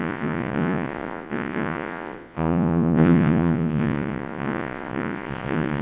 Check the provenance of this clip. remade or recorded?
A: remade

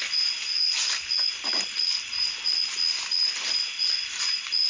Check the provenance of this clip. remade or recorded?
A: recorded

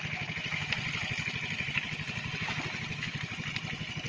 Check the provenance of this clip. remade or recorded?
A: recorded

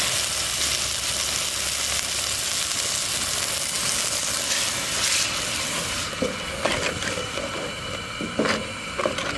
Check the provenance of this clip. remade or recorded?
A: recorded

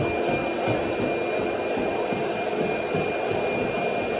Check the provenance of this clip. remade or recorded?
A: recorded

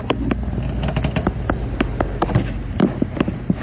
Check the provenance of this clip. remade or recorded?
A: recorded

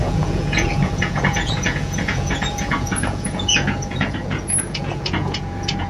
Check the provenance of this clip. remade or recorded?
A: remade